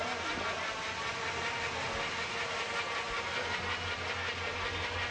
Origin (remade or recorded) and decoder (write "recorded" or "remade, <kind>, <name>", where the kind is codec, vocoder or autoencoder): recorded